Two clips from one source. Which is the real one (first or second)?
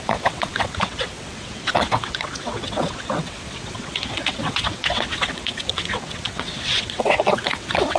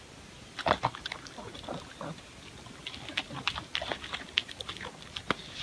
second